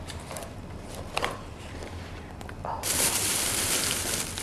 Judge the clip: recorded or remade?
remade